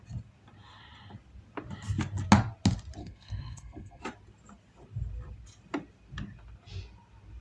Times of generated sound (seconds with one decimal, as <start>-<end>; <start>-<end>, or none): 3.0-4.0